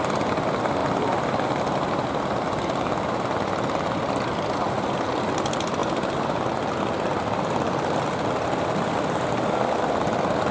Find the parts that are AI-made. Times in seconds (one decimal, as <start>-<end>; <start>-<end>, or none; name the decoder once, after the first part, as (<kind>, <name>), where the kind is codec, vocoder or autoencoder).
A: none